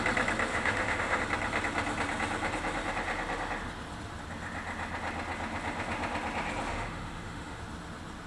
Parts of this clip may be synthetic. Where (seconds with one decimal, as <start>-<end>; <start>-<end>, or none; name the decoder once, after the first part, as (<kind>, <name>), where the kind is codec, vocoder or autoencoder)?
0.5-1.2 (autoencoder, DAC-VAE); 6.7-7.6